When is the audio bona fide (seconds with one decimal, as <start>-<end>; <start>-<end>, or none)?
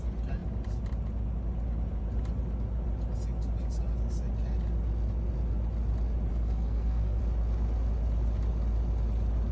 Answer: 0.0-6.3; 7.2-9.5